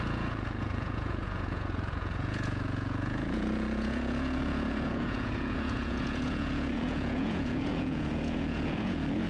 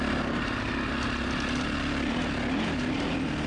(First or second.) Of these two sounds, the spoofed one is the first